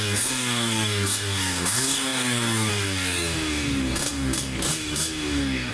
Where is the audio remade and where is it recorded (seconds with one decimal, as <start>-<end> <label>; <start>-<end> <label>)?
0.0-5.7 remade